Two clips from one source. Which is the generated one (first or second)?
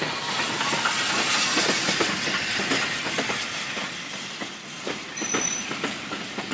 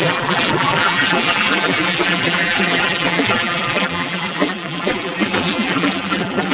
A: second